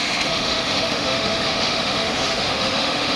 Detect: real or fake fake